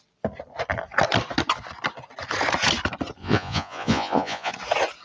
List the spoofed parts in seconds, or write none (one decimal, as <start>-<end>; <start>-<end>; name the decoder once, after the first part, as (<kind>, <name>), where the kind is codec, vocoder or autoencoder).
3.2-4.5 (vocoder, Vocos)